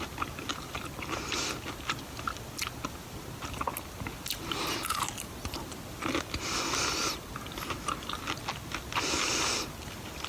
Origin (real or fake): real